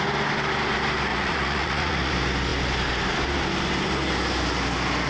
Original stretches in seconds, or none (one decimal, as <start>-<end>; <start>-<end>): 0.0-1.1; 2.1-5.1